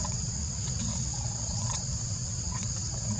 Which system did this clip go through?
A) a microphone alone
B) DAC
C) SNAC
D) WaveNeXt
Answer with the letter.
D